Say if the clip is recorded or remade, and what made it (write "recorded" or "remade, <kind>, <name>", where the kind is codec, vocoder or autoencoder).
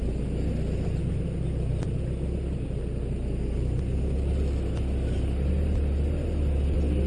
recorded